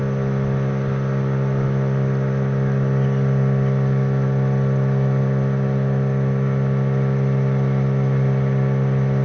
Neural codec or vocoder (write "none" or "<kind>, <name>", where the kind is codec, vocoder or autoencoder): none